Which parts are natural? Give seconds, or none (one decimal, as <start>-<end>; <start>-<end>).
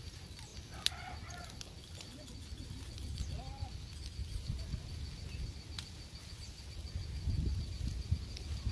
0.0-8.7